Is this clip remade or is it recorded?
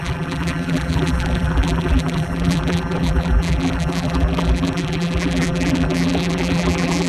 remade